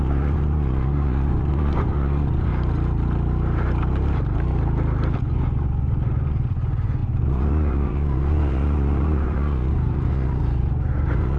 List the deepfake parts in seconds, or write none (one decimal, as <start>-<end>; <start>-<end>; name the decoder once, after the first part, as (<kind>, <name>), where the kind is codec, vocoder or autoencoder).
0.0-2.5 (vocoder, Vocos); 5.2-11.4